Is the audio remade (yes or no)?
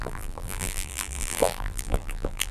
yes